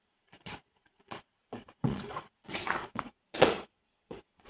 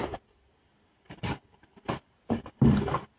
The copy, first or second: first